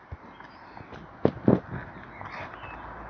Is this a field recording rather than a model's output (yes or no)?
yes